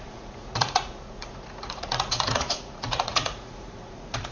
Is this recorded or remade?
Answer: remade